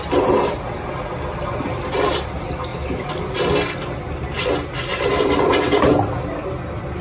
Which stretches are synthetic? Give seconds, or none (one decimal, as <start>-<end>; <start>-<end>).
2.7-3.3; 4.9-5.9